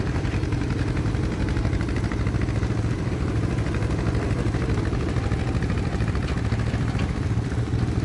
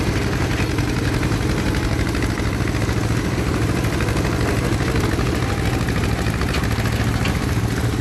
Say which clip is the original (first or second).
second